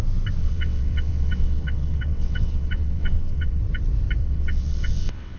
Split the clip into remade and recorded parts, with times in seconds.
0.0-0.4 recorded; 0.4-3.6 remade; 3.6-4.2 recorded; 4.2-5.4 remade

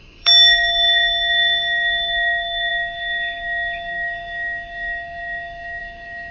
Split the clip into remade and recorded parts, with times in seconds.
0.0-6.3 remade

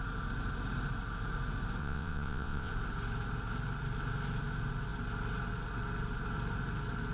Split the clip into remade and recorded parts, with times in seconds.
0.0-1.8 recorded; 1.8-2.7 remade; 2.7-7.1 recorded

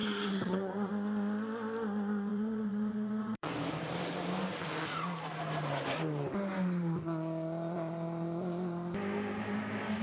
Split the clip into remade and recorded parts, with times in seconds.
0.0-0.9 remade; 0.9-2.3 recorded; 2.3-3.5 remade; 3.5-10.0 recorded

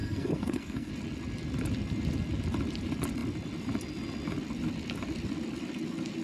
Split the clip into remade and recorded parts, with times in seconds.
0.0-0.9 remade; 0.9-6.2 recorded